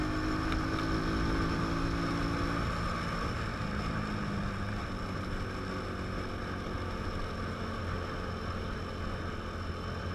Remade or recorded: recorded